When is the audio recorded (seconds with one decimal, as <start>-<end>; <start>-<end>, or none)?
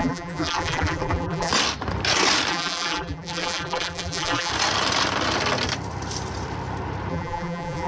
1.5-2.5; 4.5-7.1